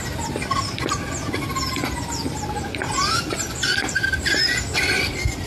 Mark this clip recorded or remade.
recorded